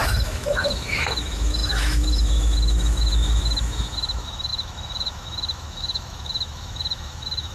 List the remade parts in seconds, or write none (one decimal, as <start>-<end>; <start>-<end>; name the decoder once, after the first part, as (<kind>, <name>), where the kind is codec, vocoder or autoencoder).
0.0-7.5 (autoencoder, DAC-VAE)